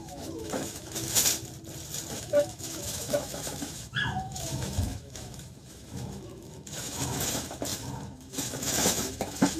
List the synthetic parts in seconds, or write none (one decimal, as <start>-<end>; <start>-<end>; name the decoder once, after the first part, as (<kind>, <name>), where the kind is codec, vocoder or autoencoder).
0.0-1.3 (autoencoder, DAC-VAE); 2.1-9.6